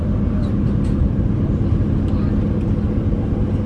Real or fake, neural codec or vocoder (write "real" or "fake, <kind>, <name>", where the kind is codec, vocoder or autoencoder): real